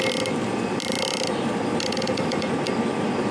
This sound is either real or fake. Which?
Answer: real